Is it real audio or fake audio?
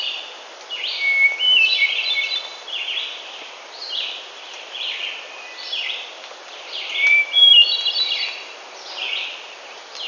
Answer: fake